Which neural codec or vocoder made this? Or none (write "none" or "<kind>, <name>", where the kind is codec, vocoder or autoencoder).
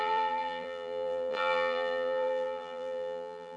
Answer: vocoder, BigVGAN v2